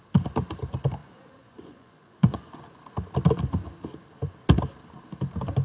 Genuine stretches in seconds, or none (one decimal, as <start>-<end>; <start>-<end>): 0.0-1.0; 2.8-5.6